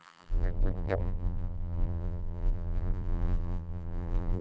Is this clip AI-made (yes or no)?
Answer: yes